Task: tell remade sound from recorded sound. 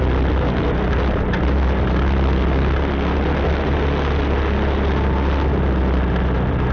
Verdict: recorded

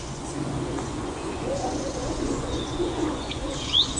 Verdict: remade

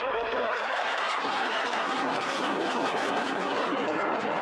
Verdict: remade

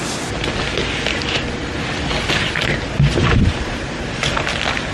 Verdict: recorded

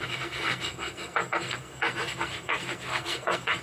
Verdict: remade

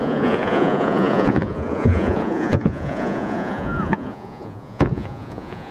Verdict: remade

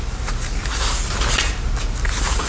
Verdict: recorded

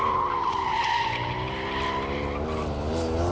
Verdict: recorded